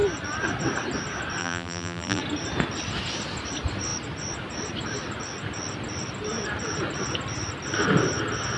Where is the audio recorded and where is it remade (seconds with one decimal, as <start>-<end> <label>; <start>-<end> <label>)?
0.0-1.4 recorded; 1.4-2.2 remade; 2.2-8.6 recorded